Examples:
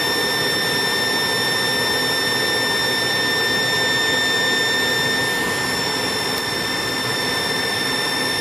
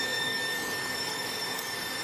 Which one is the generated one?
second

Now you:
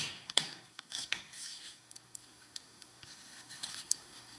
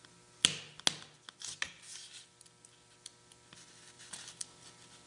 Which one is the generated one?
first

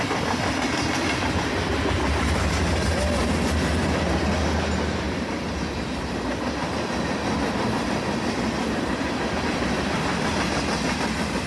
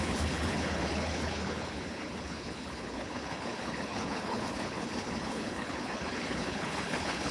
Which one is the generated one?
second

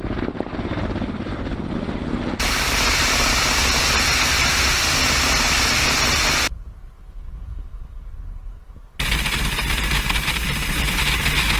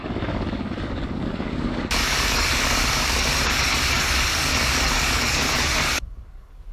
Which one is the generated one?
second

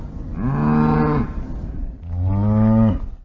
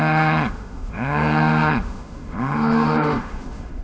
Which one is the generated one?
second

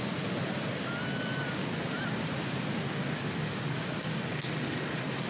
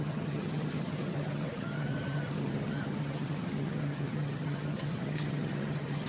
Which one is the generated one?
second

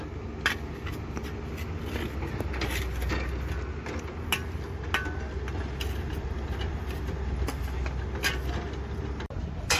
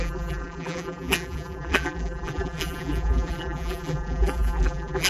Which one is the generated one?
second